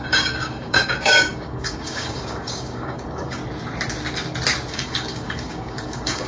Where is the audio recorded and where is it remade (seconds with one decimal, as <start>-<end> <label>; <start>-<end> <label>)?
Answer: 0.0-3.4 remade; 3.4-4.7 recorded; 4.7-6.3 remade